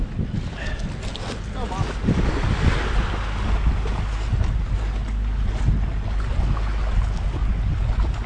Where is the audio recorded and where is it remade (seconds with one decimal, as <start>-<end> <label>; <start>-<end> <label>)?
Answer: 0.0-7.4 recorded; 7.4-8.3 remade